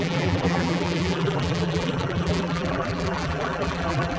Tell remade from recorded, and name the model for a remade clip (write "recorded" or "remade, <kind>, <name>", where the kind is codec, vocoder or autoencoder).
remade, vocoder, BigVGAN v2